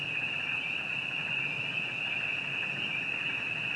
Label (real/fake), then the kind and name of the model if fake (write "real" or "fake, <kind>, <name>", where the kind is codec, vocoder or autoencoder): real